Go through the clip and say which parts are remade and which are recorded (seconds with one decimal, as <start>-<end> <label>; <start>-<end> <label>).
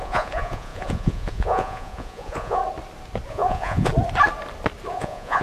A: 0.0-2.6 remade; 2.6-3.3 recorded; 3.3-3.9 remade; 3.9-4.9 recorded; 4.9-5.4 remade